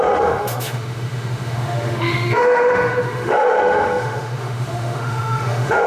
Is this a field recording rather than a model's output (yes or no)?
no